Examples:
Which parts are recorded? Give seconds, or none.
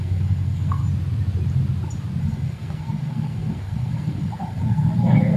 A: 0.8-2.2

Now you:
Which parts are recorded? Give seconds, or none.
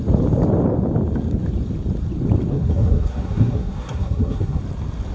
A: 0.0-2.5; 4.6-5.1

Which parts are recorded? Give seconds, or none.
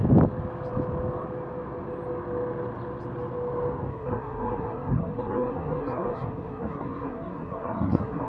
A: 0.0-3.9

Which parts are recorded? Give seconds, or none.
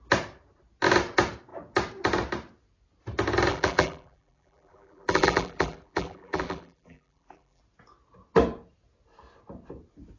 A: 0.0-3.5; 7.6-10.2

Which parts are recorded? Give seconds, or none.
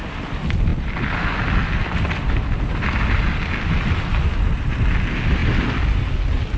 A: 0.0-6.6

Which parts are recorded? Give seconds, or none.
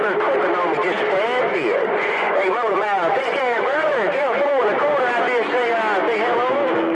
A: 0.0-1.5; 4.6-6.9